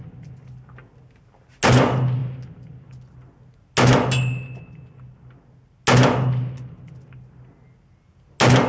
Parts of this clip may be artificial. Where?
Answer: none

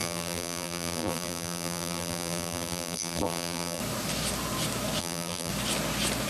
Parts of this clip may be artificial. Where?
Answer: 0.0-3.8 (vocoder, BigVGAN v2); 5.0-5.5

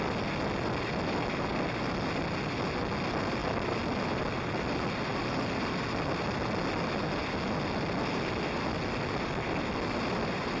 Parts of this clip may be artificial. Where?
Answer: none

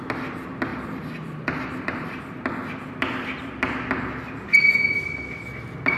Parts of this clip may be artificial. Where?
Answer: 0.7-2.2 (vocoder, BigVGAN v2)

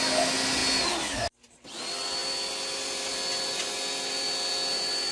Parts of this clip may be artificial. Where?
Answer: none